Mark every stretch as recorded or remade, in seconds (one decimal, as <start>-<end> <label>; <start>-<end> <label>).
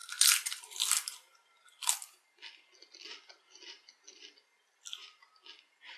0.0-1.9 remade; 1.9-6.0 recorded